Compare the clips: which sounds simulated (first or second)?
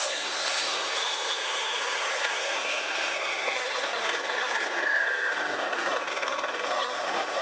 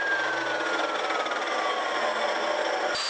first